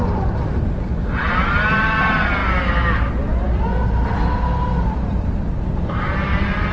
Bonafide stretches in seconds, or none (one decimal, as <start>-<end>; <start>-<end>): 0.0-6.7

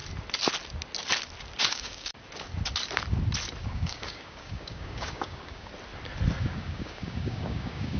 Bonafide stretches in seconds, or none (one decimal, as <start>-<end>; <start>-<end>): 0.0-1.6; 2.1-3.6; 5.7-6.4

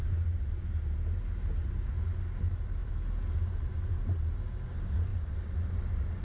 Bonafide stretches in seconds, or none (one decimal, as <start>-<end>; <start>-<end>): 0.0-6.2